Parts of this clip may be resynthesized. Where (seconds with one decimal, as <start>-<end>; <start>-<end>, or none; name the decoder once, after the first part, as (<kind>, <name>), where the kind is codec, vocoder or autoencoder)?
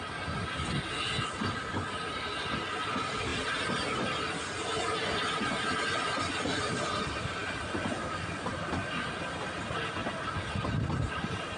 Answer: none